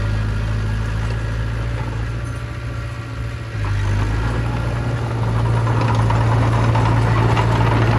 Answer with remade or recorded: recorded